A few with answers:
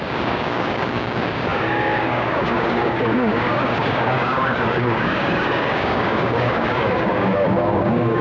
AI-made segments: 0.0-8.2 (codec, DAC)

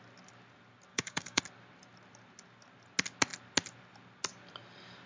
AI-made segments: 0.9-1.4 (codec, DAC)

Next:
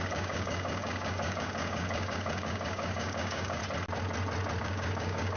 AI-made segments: 0.0-3.6 (codec, DAC); 4.6-5.4